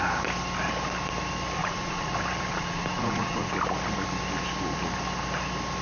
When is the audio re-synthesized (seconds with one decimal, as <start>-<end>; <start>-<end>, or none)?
1.6-2.1; 2.5-3.5

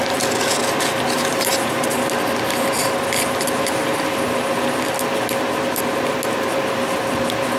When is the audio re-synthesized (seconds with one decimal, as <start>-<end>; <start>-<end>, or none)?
none

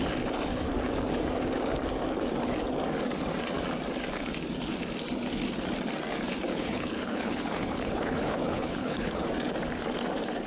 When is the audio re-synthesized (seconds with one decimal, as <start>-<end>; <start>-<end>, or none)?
6.5-9.3

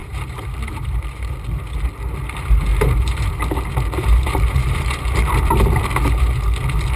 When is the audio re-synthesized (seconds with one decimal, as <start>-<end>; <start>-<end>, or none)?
0.0-1.0; 2.7-3.3; 4.0-5.0